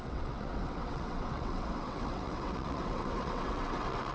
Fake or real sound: fake